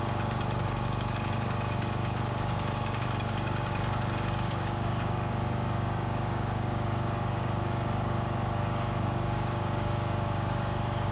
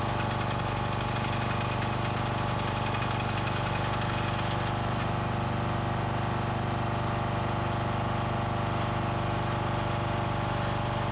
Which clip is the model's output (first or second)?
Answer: first